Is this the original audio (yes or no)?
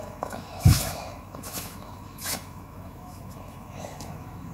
no